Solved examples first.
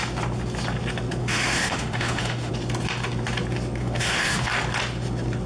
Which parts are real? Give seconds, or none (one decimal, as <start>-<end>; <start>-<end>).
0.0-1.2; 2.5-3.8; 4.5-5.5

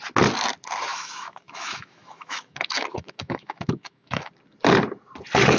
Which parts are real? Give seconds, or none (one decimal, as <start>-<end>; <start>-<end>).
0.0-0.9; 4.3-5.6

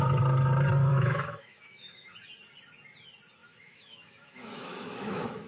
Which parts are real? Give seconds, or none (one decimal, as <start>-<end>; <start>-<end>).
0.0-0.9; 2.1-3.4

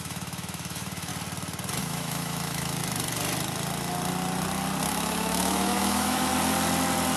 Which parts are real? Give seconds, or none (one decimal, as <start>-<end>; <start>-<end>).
1.1-1.8; 2.8-4.9; 6.3-7.2

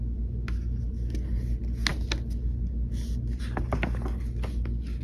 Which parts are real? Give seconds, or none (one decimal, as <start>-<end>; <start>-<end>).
0.0-5.0

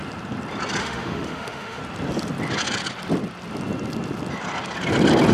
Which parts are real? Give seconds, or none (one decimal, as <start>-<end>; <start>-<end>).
0.0-0.8; 1.8-5.3

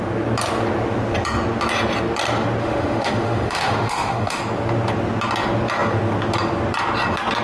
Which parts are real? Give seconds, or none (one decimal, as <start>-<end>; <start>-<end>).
0.0-2.6; 4.4-7.4

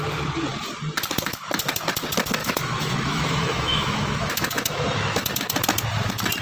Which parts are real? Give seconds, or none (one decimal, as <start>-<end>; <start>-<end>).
0.0-2.4; 5.3-6.4